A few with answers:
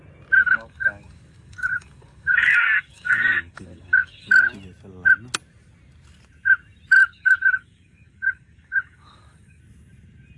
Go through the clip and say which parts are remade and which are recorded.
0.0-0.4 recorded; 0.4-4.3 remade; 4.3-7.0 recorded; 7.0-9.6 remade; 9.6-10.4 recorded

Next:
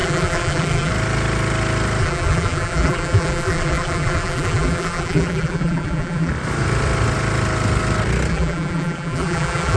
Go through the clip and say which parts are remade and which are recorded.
0.0-0.9 remade; 0.9-2.0 recorded; 2.0-6.3 remade; 6.3-8.3 recorded; 8.3-9.8 remade